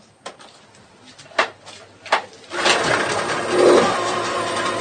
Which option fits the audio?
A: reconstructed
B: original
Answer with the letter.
B